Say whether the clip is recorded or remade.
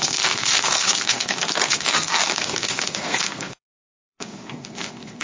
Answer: remade